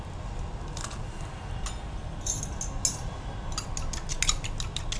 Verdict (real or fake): real